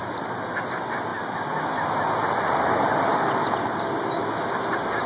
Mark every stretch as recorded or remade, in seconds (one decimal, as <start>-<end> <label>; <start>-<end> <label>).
0.0-5.1 recorded